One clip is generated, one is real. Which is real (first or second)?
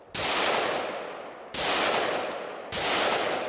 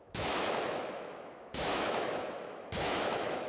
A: first